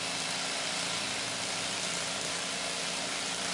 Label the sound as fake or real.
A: real